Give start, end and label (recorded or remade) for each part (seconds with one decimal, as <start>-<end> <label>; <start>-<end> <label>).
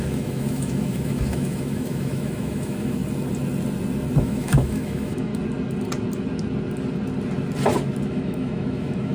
0.0-3.0 remade; 3.0-4.2 recorded; 4.2-5.3 remade; 5.3-8.1 recorded; 8.1-9.1 remade